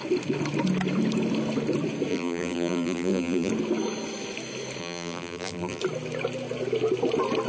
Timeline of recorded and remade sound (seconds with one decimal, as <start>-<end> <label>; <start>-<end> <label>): 0.0-2.1 recorded; 2.1-3.5 remade; 3.5-4.8 recorded; 4.8-5.8 remade; 5.8-7.5 recorded